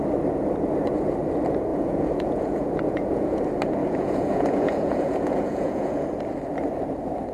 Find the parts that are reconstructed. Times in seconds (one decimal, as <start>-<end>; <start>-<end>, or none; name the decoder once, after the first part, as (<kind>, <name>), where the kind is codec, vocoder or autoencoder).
1.7-3.4 (vocoder, Vocos); 3.8-6.1